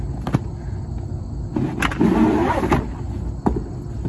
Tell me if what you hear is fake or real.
real